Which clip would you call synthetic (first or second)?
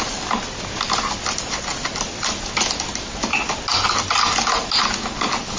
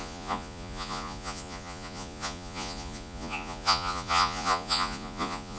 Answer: second